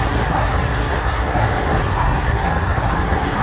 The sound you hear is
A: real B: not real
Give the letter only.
B